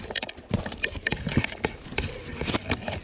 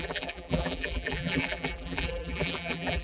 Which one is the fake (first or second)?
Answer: second